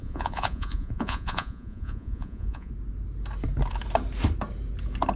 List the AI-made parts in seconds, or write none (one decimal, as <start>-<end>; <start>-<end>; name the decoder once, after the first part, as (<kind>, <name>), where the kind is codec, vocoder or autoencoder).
0.0-2.7 (vocoder, Vocos)